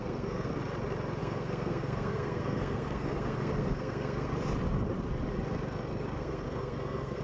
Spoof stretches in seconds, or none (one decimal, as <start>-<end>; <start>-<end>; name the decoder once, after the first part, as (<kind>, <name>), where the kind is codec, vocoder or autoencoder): 0.0-0.5 (codec, SNAC); 1.2-4.3; 6.2-7.2